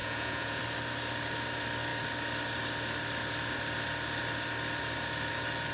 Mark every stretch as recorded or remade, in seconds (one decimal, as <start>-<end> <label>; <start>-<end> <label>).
0.0-0.6 remade; 0.6-5.7 recorded